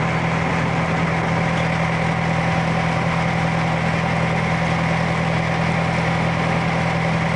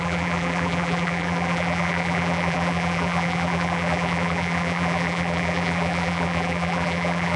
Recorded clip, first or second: first